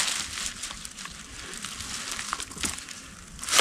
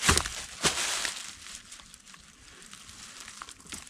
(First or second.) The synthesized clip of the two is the second